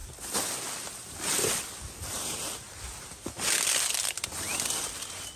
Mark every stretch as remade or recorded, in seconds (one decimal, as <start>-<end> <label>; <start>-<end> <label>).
0.0-5.4 recorded